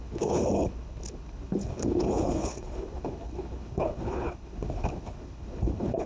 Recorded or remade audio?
remade